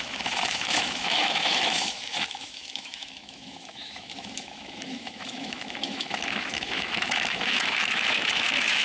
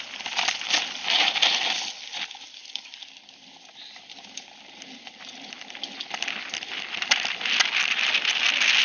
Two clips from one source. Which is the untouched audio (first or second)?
second